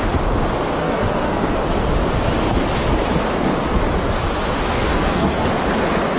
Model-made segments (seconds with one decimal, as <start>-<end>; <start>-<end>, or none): 0.8-1.6; 4.6-5.4